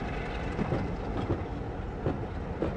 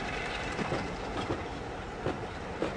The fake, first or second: second